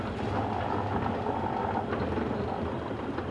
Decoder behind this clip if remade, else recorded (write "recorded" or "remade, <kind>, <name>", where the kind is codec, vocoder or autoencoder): recorded